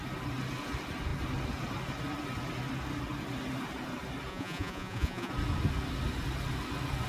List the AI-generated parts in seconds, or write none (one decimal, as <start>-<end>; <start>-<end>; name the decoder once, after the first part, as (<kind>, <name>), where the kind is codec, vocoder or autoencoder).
4.3-5.3 (vocoder, Vocos)